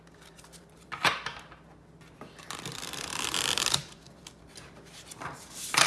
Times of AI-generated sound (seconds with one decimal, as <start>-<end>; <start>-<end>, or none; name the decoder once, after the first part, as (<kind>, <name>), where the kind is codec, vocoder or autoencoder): 0.0-1.0 (vocoder, BigVGAN v2); 2.2-5.9